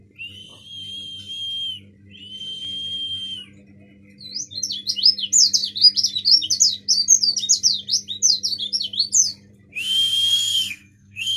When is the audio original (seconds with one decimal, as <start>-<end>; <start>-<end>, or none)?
0.0-10.3